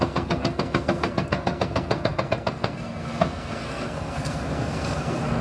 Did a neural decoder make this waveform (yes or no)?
yes